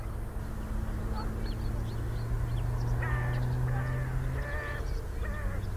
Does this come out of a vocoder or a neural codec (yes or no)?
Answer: no